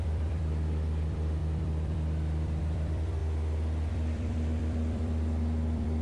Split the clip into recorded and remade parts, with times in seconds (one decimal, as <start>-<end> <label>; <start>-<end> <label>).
0.0-3.2 remade; 3.2-3.9 recorded; 3.9-6.0 remade